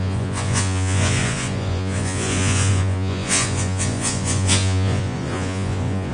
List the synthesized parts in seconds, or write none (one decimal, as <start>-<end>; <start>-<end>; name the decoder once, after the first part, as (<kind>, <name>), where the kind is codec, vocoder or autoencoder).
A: 0.0-6.1 (vocoder, Vocos)